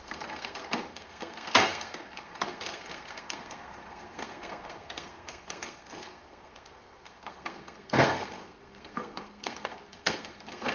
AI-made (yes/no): yes